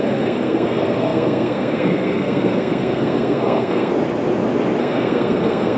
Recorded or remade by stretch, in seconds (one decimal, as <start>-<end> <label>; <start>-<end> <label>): 0.0-3.9 remade; 3.9-4.8 recorded; 4.8-5.8 remade